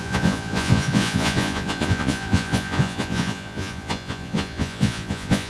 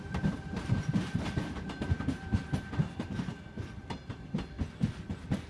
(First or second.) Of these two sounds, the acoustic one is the second